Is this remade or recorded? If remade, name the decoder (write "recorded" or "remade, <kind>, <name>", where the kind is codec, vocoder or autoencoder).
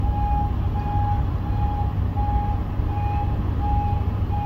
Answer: recorded